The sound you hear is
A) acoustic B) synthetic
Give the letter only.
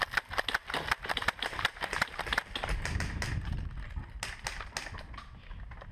A